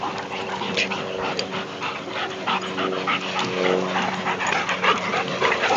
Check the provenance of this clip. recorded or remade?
recorded